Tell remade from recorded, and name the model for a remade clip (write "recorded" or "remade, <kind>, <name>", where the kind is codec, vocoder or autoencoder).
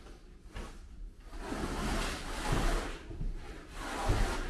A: recorded